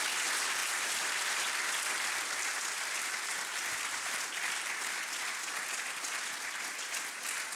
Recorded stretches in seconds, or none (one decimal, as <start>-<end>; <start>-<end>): 0.0-3.5; 4.2-7.6